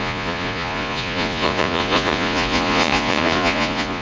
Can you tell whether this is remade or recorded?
remade